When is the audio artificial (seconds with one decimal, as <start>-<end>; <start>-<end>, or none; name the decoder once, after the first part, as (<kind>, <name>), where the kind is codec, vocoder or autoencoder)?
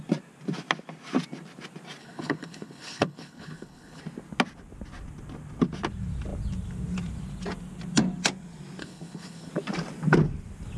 2.0-4.0 (codec, HILCodec); 8.8-9.5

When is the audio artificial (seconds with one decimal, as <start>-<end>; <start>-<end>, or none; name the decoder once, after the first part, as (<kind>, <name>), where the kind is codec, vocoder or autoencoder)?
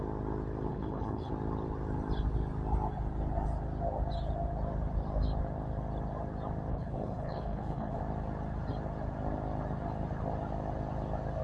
0.7-1.3 (codec, HILCodec); 6.7-8.0